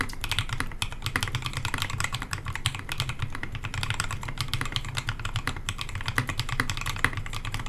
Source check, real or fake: real